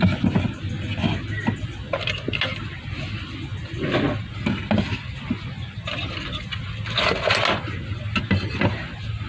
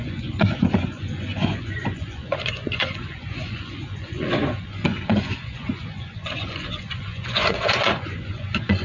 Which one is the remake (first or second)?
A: second